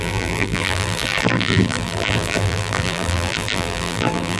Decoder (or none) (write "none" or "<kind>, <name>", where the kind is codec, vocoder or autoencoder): vocoder, BigVGAN v2